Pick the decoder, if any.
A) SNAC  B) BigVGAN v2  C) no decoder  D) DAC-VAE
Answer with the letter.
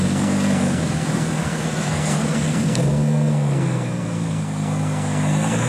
A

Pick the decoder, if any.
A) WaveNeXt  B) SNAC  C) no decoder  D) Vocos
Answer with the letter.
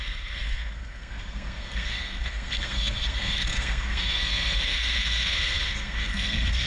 B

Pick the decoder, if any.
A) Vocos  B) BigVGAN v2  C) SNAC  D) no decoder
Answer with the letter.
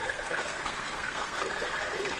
C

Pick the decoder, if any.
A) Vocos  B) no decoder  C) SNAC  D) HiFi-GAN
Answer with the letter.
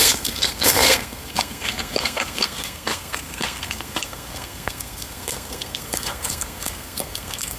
C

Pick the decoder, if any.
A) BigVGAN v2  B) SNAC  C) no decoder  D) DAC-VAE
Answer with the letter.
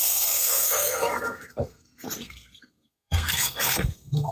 B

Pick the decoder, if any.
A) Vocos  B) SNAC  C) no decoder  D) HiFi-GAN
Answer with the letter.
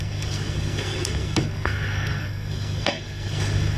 B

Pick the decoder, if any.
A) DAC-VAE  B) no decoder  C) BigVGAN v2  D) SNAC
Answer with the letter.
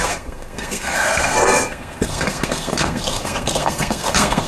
D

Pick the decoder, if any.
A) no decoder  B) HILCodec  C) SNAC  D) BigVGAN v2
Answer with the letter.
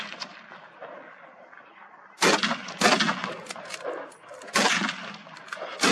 A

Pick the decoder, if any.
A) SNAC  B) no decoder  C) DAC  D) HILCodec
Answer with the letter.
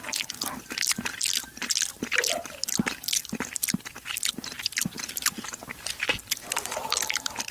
B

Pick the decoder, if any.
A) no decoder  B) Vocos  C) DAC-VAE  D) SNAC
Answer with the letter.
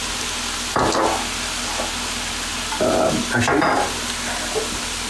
A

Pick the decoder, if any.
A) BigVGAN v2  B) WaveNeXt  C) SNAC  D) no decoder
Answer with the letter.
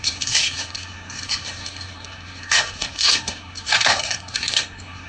C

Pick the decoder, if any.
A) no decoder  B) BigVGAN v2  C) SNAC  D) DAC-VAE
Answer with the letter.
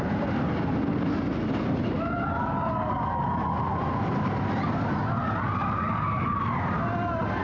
A